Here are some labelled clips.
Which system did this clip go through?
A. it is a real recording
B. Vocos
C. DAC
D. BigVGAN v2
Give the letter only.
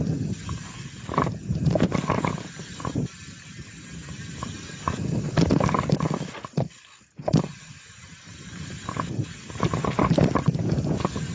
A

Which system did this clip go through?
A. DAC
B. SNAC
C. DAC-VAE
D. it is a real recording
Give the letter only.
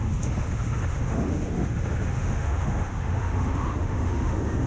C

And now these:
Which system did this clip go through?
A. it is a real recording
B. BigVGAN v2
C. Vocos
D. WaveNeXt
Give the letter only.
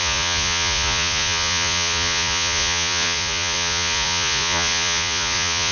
C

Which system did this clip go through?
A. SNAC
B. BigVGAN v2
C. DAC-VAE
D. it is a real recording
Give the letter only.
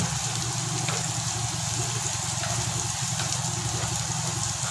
D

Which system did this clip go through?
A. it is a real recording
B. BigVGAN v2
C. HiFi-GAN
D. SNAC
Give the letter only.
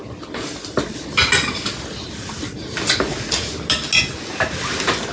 A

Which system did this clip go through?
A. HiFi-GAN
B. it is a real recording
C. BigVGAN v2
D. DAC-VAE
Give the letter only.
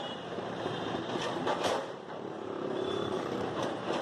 C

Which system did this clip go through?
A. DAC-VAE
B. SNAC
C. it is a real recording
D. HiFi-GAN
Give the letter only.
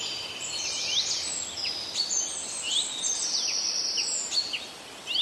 C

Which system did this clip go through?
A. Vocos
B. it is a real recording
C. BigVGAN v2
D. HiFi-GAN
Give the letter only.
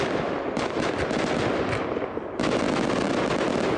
B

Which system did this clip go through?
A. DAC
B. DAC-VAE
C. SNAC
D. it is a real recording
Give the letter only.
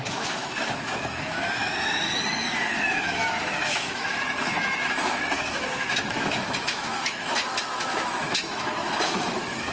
B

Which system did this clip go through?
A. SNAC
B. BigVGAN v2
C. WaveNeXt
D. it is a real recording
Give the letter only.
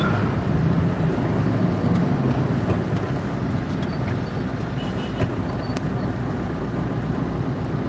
D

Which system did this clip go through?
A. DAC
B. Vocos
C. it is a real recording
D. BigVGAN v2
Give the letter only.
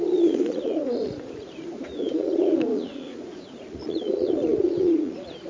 B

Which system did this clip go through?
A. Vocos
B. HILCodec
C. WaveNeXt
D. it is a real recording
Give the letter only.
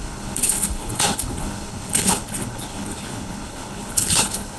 B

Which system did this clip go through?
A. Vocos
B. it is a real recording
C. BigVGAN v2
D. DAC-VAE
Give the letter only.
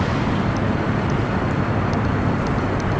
B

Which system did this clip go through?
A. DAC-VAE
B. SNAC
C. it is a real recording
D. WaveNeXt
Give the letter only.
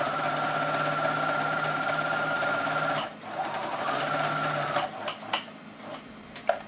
C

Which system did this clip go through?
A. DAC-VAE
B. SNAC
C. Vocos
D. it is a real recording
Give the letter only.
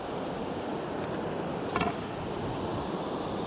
D